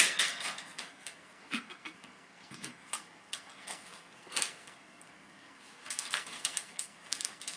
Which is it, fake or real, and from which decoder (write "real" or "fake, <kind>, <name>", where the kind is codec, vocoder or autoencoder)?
fake, codec, SNAC